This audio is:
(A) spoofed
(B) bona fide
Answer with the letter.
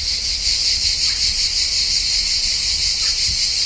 B